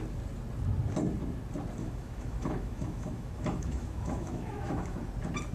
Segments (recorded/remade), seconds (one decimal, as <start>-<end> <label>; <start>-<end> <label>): 0.0-1.8 recorded; 1.8-5.1 remade; 5.1-5.5 recorded